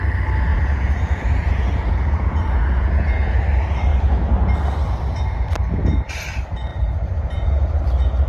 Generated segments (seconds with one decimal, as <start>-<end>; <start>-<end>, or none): 0.5-3.4; 6.7-7.8